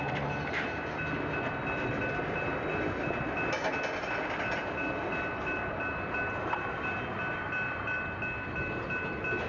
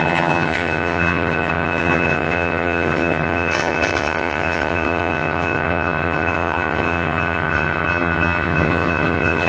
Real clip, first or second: first